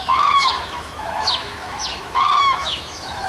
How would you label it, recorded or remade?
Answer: remade